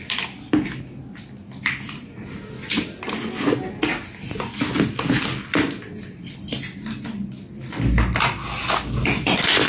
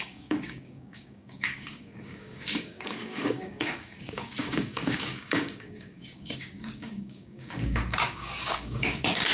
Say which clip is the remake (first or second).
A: second